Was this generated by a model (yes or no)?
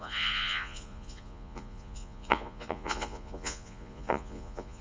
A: yes